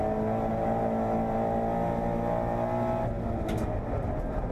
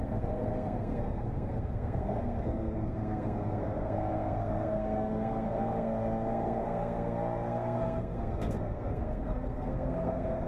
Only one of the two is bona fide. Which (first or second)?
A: first